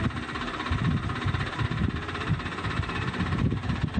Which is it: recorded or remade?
recorded